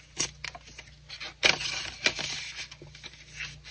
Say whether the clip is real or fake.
real